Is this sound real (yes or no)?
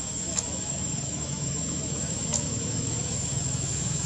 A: no